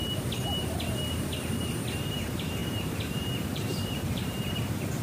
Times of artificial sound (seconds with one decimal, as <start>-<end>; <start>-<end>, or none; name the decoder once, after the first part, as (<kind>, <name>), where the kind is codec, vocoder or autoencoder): 2.1-5.0 (vocoder, BigVGAN v2)